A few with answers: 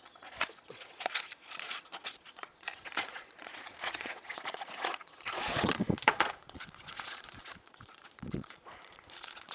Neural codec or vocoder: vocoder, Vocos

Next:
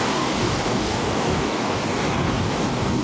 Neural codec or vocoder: codec, DAC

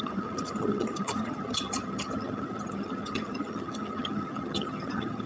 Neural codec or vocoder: vocoder, HiFi-GAN